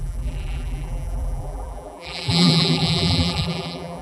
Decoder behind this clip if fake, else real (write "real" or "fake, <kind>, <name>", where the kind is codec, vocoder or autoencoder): fake, vocoder, BigVGAN v2